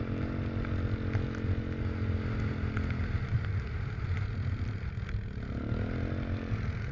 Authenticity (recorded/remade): recorded